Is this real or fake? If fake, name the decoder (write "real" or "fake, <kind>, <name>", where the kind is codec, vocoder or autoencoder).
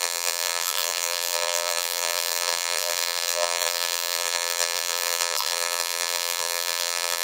fake, vocoder, BigVGAN v2